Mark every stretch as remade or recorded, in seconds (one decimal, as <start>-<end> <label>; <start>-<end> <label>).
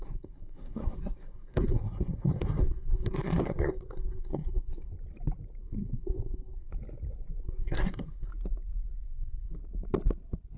0.0-4.9 remade; 4.9-5.6 recorded; 5.6-6.7 remade; 6.7-7.4 recorded; 7.4-8.3 remade; 8.3-9.1 recorded; 9.1-9.6 remade; 9.6-10.6 recorded